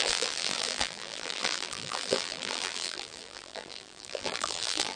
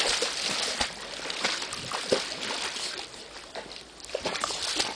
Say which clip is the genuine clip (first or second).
second